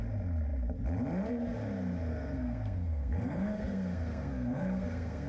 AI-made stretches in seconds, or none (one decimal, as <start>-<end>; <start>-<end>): 2.1-5.3